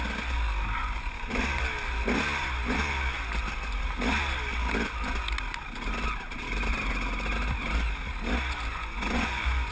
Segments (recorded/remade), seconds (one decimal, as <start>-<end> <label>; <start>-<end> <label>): 0.0-0.8 recorded; 0.8-1.3 remade; 1.3-8.7 recorded; 8.7-9.7 remade